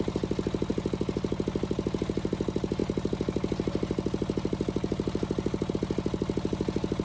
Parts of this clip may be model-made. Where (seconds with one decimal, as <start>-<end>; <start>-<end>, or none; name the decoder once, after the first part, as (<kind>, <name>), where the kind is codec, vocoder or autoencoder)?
none